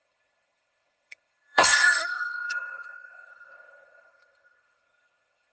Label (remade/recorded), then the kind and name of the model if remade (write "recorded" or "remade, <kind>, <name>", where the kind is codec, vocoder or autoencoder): remade, codec, SNAC